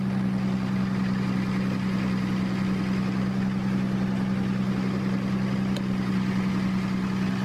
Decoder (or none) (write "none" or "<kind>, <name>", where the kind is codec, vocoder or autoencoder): none